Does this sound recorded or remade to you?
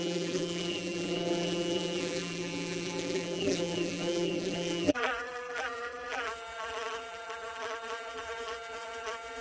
remade